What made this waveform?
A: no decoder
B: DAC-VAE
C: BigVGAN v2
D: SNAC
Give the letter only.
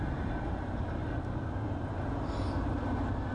A